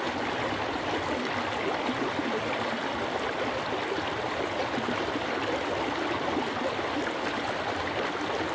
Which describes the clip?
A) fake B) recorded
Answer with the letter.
B